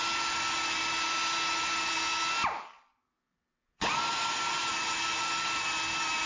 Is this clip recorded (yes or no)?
yes